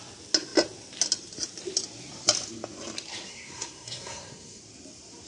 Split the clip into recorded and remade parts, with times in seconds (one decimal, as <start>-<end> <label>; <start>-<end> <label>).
0.0-3.3 recorded; 3.3-4.6 remade; 4.6-5.3 recorded